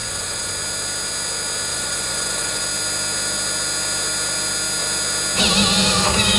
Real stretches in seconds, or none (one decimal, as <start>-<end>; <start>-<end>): 0.5-1.7; 2.6-6.4